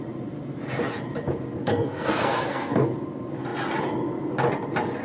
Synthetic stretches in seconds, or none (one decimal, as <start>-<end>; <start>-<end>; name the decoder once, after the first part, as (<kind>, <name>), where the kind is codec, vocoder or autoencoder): 1.6-2.9 (codec, SNAC)

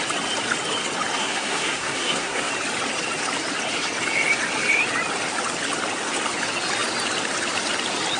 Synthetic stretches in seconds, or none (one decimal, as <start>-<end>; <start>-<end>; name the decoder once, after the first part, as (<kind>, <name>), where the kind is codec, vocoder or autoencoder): 1.2-2.5 (codec, SNAC)